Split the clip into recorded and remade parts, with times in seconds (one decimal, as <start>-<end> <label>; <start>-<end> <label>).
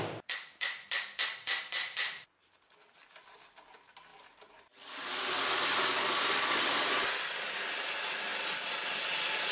0.0-9.5 recorded